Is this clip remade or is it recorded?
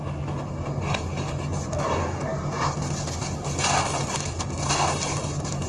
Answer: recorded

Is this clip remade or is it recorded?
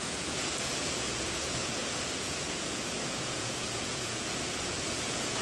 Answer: remade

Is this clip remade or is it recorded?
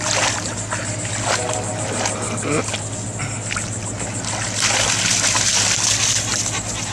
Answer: recorded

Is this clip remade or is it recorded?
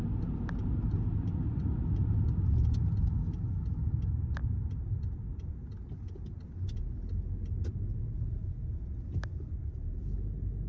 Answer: recorded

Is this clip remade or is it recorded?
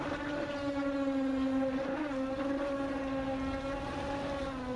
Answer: recorded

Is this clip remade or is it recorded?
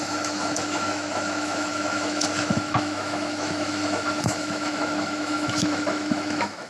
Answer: remade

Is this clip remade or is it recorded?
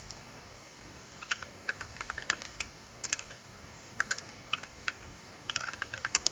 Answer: remade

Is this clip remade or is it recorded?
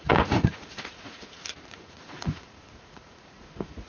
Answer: remade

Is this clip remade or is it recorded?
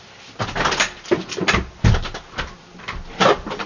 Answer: recorded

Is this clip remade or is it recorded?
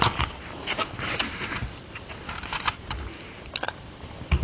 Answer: recorded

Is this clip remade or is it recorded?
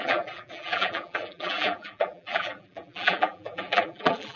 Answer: remade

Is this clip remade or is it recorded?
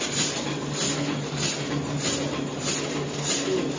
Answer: recorded